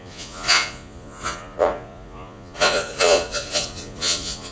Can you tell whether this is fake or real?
fake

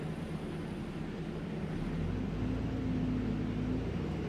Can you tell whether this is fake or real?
real